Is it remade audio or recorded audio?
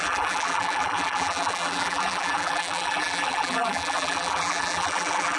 remade